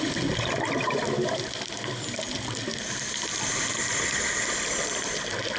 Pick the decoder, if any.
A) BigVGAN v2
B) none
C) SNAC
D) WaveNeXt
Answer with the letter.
A